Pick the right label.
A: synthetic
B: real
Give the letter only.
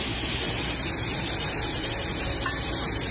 A